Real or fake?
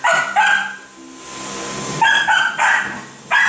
real